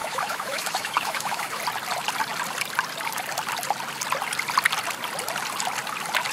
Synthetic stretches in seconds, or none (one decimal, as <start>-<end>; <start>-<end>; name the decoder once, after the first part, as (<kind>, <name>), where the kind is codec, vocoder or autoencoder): 0.0-1.6 (autoencoder, DAC-VAE)